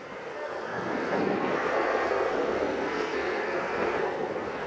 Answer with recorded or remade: remade